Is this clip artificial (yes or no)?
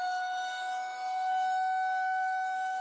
yes